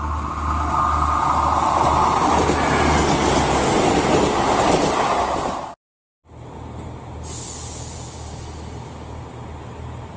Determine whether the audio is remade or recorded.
recorded